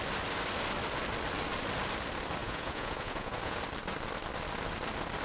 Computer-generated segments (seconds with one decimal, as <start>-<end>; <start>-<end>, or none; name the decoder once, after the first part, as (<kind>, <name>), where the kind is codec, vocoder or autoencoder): 2.4-3.6 (vocoder, Vocos)